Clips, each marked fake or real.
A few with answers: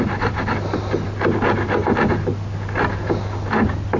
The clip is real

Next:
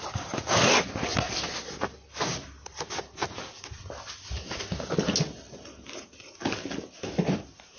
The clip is real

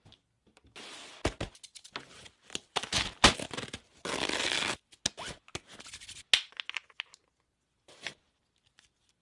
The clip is real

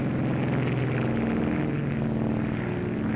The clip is real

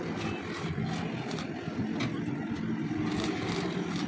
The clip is real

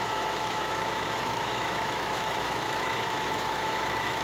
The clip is fake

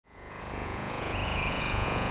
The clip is fake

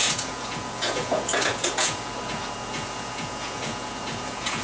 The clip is fake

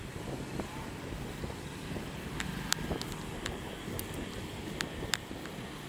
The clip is real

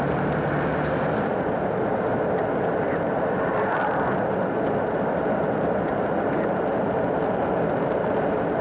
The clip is real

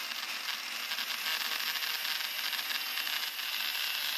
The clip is real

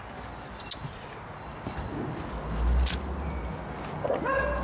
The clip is real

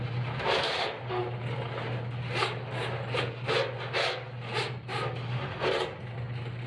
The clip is real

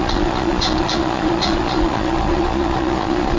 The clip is fake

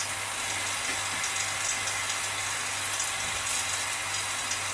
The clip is real